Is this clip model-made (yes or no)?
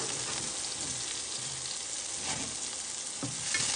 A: no